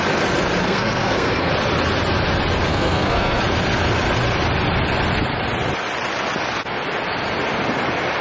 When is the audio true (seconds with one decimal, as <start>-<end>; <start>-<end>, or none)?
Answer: 0.0-0.6; 1.5-2.7; 3.4-8.2